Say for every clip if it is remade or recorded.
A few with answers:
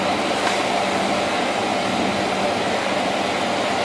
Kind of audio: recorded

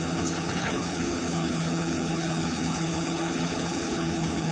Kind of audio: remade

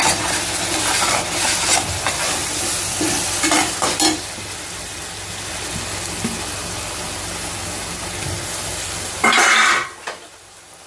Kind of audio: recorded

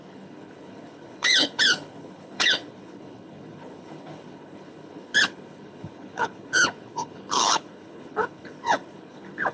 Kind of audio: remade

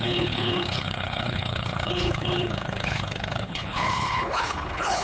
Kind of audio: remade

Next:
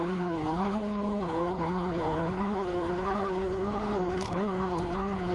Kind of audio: remade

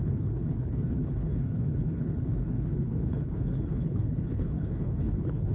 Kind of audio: remade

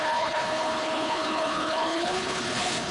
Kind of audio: remade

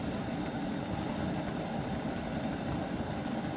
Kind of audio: recorded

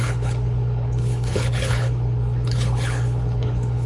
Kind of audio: remade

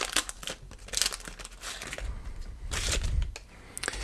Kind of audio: recorded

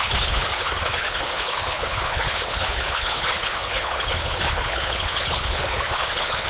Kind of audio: remade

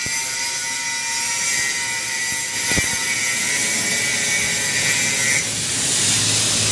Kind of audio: recorded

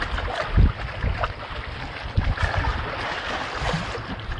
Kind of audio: recorded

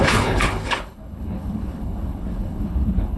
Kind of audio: remade